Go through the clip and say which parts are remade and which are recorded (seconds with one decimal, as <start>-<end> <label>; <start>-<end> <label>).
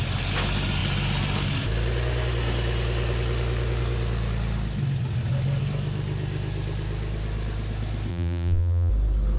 0.0-8.1 recorded; 8.1-8.9 remade; 8.9-9.4 recorded